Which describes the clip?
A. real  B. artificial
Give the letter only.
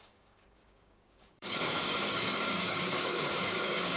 B